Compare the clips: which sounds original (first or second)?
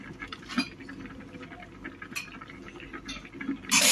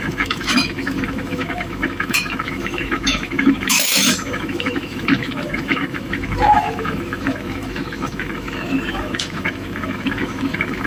first